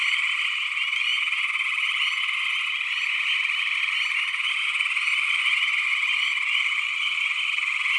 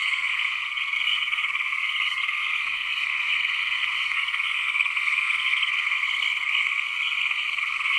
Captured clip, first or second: first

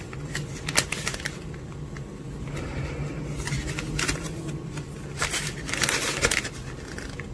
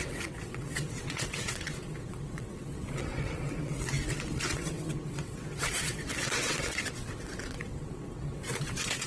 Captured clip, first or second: first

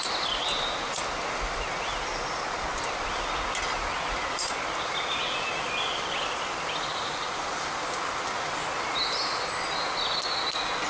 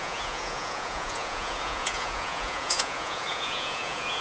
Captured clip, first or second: first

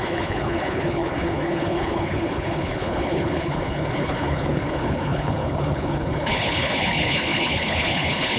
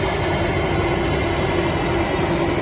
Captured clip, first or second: second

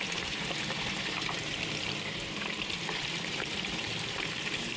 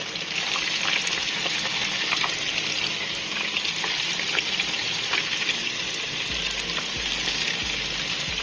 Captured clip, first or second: second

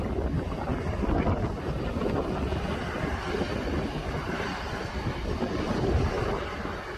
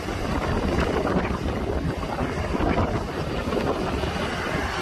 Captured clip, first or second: first